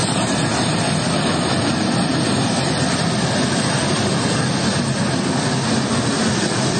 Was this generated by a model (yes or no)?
no